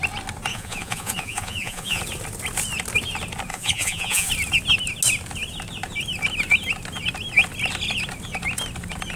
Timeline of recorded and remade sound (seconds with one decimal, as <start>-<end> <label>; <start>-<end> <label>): 0.0-0.5 recorded; 0.5-2.0 remade; 2.0-3.5 recorded; 3.5-4.3 remade; 4.3-9.2 recorded